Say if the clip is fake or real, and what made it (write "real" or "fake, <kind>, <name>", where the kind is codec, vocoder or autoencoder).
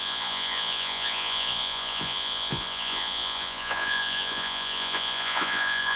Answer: fake, vocoder, Vocos